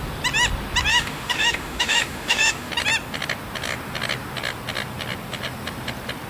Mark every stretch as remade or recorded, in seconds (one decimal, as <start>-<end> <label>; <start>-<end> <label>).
0.0-0.9 recorded; 0.9-2.7 remade; 2.7-6.3 recorded